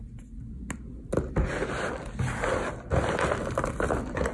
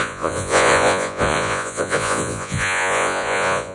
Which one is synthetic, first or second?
second